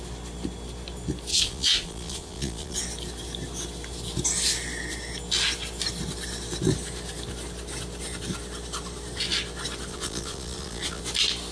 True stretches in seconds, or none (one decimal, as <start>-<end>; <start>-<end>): 0.0-1.3; 2.8-9.9; 11.0-11.5